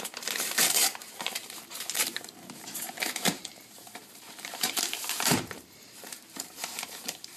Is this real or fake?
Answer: fake